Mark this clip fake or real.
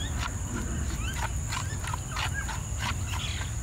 real